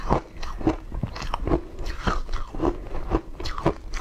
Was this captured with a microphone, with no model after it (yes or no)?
yes